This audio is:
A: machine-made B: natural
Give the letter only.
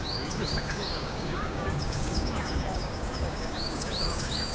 A